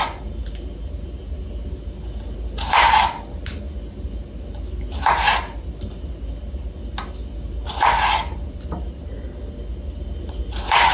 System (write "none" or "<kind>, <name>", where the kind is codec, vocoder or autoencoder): none